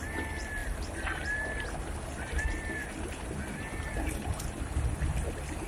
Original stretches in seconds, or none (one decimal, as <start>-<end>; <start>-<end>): 0.0-5.7